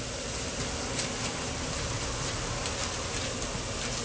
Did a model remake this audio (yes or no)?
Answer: no